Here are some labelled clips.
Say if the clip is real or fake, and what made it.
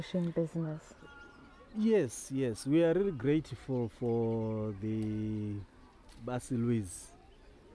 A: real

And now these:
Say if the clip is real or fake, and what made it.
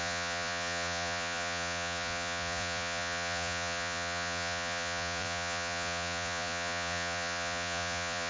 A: fake, vocoder, Vocos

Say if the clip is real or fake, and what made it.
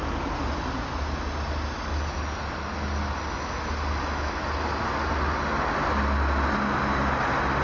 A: real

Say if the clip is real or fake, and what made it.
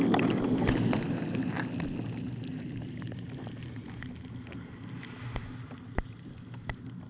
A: real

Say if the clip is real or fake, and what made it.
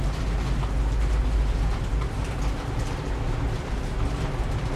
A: real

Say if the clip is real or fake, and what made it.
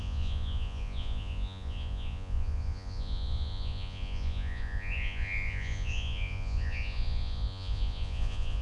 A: fake, vocoder, Vocos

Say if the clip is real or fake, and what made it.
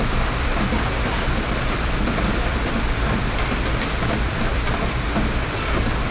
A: fake, vocoder, BigVGAN v2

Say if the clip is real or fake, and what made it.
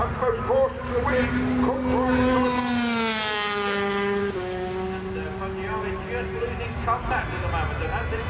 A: real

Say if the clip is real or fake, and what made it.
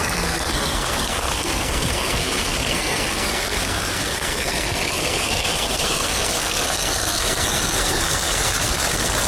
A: fake, codec, SNAC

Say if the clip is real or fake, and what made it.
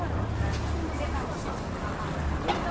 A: real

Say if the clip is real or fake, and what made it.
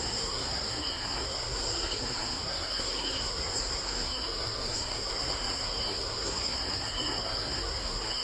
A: fake, codec, SNAC